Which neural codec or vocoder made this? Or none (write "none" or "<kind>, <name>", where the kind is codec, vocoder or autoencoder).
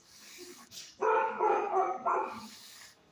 codec, DAC